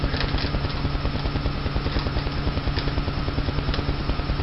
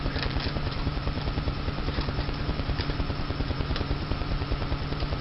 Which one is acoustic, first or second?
first